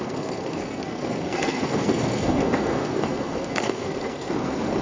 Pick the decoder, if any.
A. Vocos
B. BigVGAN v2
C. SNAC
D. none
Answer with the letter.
C